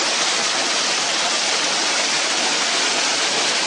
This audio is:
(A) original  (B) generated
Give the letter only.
A